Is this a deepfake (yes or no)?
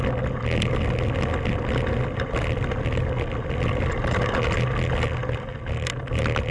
no